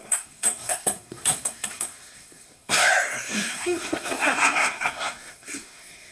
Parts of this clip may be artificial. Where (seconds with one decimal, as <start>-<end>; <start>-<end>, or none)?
0.0-6.1